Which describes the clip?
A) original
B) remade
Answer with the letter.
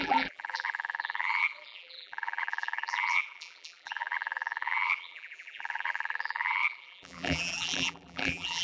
B